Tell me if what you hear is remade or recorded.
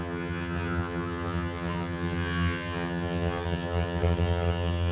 remade